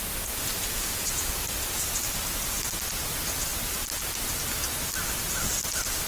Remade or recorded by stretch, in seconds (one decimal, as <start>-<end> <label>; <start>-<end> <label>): 0.0-0.6 recorded; 0.6-1.3 remade; 1.3-6.1 recorded